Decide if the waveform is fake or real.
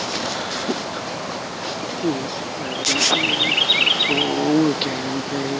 real